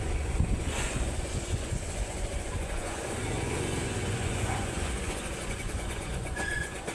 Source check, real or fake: fake